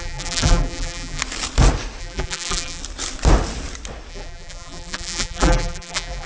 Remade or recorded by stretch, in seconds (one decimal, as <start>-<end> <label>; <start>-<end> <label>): 0.0-1.2 remade; 1.2-2.0 recorded; 2.0-2.8 remade; 2.8-4.1 recorded; 4.1-6.3 remade